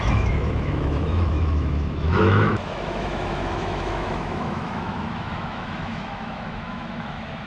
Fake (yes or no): yes